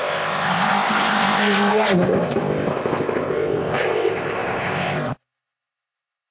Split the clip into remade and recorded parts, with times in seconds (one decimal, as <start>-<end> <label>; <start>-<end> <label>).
0.0-6.3 remade